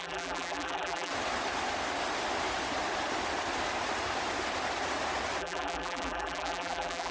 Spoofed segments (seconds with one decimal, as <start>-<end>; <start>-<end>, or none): 0.0-1.1; 5.4-7.1